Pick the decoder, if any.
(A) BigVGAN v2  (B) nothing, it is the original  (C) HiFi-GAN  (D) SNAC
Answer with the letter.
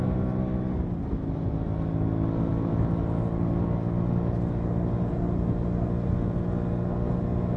B